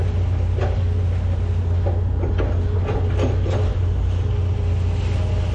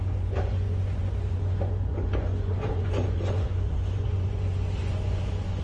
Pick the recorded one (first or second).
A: first